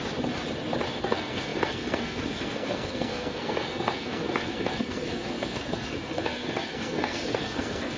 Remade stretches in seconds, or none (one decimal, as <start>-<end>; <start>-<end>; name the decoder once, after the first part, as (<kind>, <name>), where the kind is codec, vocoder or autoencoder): 1.0-8.0 (codec, SNAC)